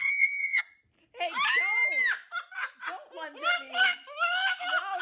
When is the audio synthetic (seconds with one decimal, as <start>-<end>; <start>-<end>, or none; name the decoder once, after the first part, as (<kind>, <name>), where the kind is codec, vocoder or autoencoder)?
0.0-0.6 (vocoder, Vocos)